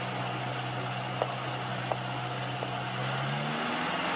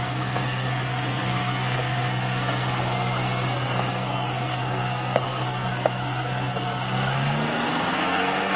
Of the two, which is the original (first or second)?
first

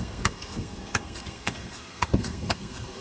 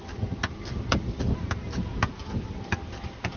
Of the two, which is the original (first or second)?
second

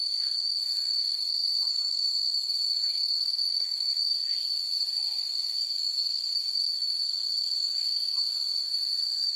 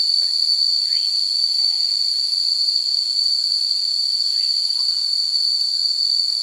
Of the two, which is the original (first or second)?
second